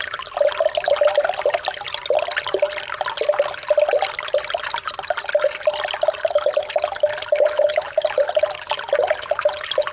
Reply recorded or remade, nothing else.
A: recorded